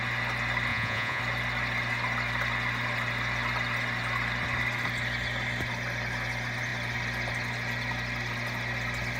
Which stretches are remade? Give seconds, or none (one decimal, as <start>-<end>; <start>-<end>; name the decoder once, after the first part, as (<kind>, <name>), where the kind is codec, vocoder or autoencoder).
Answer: 0.7-1.2 (vocoder, Vocos)

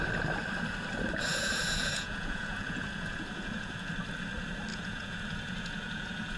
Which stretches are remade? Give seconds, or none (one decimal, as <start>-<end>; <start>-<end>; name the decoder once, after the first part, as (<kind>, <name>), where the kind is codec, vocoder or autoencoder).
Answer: 1.3-3.9 (vocoder, Vocos); 4.7-6.4

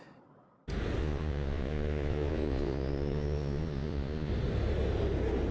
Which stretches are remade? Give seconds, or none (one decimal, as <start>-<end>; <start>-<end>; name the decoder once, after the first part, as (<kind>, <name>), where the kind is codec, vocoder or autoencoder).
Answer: 1.0-4.3 (vocoder, Vocos)

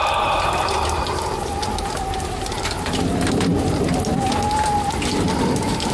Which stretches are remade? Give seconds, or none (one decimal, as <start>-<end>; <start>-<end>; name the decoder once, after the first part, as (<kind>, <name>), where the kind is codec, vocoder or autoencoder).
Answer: none